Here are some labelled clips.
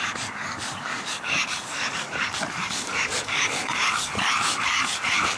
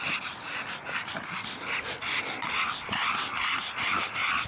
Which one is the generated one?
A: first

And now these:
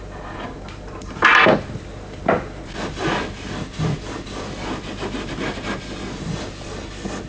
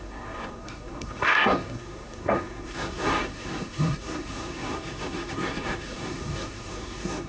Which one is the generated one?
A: second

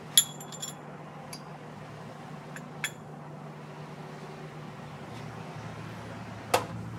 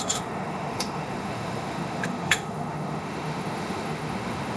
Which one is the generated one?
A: second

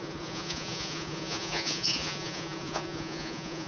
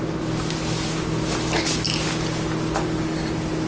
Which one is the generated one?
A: first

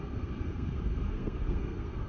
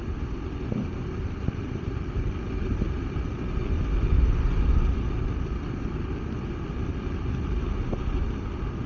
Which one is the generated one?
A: first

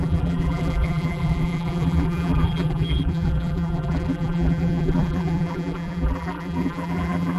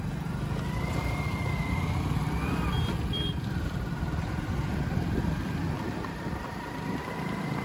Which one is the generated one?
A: first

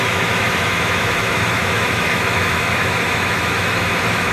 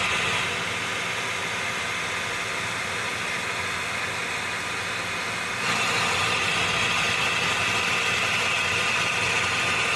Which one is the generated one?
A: first